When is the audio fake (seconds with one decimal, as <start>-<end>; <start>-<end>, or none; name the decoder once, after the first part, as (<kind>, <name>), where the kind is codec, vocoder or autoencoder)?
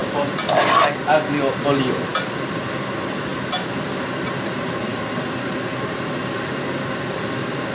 none